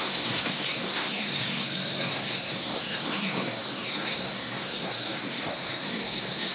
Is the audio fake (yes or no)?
yes